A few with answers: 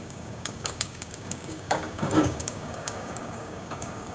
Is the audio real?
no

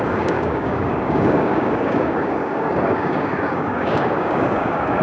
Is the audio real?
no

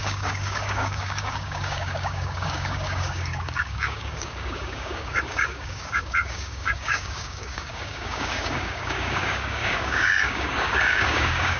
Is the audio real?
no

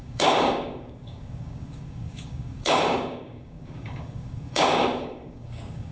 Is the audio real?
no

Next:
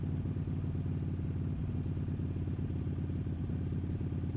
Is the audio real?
yes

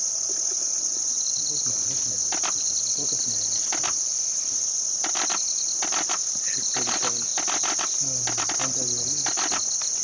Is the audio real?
yes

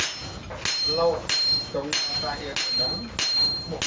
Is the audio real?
yes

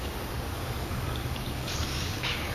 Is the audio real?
no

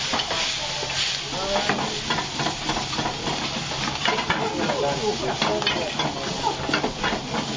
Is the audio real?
yes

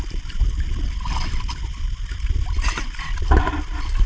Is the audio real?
yes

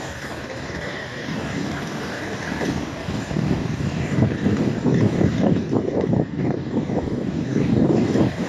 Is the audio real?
no